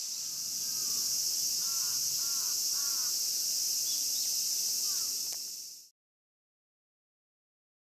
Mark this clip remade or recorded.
recorded